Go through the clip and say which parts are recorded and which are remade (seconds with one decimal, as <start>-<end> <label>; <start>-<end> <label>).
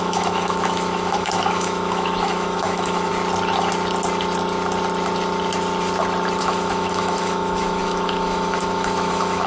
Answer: 0.0-3.1 remade; 3.1-6.4 recorded; 6.4-9.5 remade